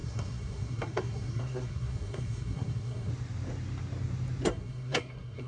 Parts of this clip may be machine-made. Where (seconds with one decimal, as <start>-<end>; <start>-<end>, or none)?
0.0-3.1; 4.5-5.5